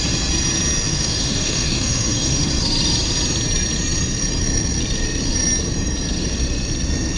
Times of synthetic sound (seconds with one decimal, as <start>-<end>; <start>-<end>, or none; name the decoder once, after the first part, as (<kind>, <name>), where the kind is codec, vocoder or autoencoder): 0.9-2.5 (autoencoder, DAC-VAE)